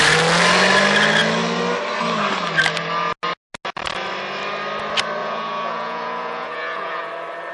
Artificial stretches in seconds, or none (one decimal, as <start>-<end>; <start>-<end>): 5.2-7.1